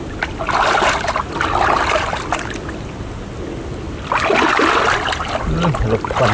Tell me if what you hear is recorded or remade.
recorded